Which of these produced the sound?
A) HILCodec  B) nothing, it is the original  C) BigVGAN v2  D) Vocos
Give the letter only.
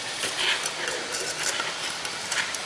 B